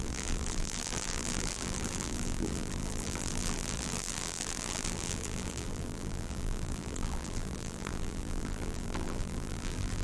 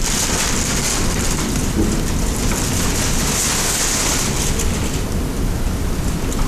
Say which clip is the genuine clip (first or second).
second